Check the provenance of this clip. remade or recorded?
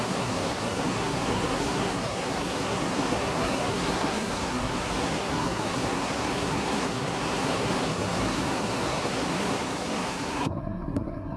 remade